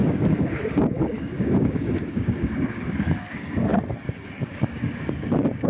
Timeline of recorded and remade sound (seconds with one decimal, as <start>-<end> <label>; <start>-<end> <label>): 0.0-3.7 remade; 3.7-4.4 recorded; 4.4-5.7 remade